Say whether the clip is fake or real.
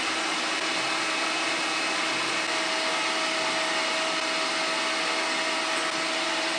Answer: real